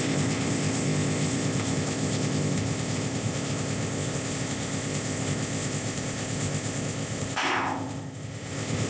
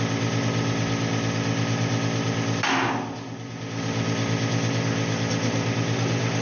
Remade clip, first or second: first